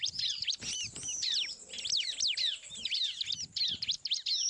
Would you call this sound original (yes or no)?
yes